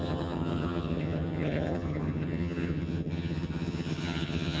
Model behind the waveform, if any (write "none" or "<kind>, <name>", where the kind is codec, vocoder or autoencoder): vocoder, HiFi-GAN